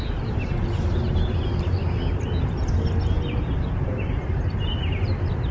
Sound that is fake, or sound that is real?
real